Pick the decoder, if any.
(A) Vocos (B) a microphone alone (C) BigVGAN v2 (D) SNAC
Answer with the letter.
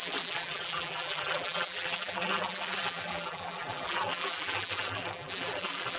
C